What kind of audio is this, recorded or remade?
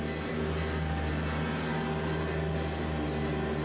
recorded